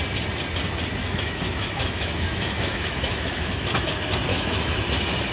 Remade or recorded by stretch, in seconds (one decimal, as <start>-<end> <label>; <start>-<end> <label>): 0.0-1.0 recorded; 1.0-3.9 remade; 3.9-4.3 recorded; 4.3-4.8 remade; 4.8-5.3 recorded